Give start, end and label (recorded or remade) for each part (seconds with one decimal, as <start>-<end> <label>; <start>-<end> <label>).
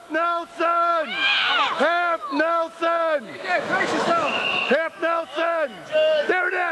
0.0-6.7 remade